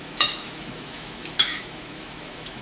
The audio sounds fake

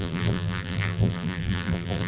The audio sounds fake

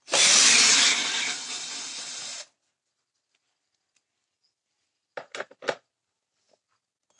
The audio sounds real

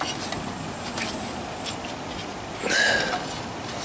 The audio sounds real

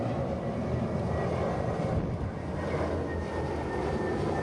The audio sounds real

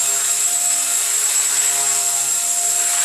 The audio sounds real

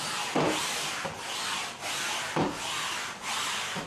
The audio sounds real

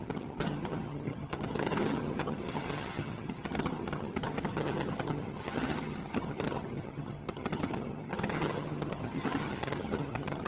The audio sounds fake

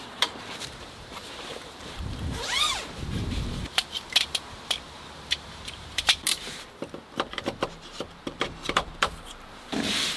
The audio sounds fake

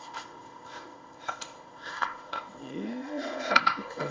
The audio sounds fake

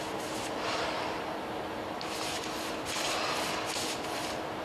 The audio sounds real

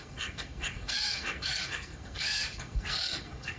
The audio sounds fake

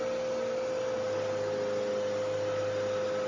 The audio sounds real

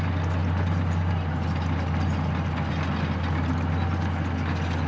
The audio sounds real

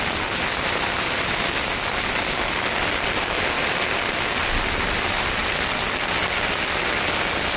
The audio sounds real